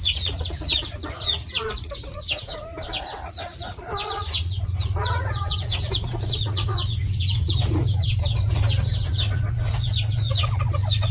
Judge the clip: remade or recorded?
remade